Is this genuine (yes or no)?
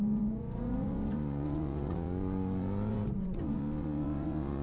no